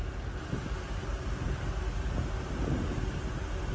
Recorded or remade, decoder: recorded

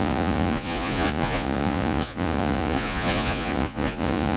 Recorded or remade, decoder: remade, vocoder, Vocos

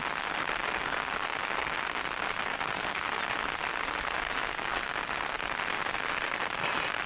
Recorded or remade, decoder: recorded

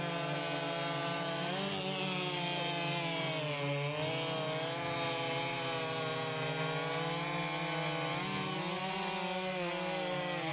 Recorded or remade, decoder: recorded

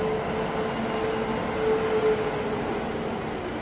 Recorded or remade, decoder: recorded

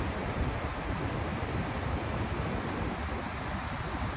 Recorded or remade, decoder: recorded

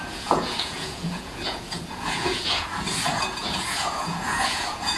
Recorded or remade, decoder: remade, vocoder, Vocos